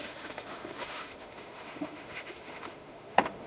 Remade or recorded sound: remade